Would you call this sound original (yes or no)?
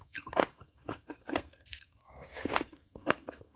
no